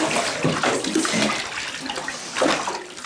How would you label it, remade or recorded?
recorded